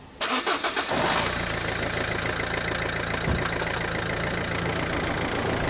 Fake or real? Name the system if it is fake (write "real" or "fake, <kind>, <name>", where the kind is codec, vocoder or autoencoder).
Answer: real